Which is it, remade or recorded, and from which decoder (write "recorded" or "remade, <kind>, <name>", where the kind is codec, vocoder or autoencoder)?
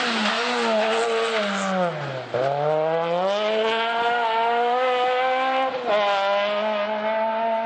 recorded